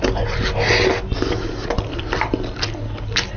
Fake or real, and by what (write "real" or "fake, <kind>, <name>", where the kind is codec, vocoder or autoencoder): real